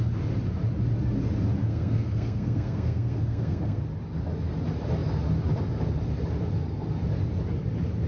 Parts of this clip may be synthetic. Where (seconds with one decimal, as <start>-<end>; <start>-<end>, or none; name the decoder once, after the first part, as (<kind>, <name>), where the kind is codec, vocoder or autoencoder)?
1.6-3.8 (codec, SNAC)